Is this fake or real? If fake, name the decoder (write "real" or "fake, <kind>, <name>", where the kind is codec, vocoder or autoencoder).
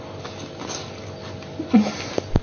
real